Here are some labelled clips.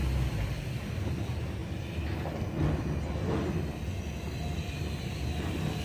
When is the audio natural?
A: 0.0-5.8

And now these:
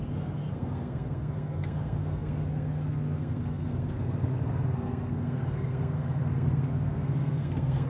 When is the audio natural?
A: none

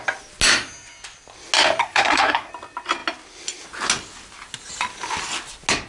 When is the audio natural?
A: 0.0-1.8; 2.5-5.9